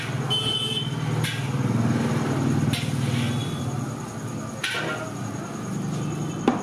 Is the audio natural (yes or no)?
yes